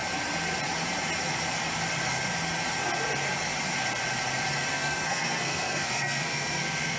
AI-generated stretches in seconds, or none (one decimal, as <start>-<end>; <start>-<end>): 4.7-7.0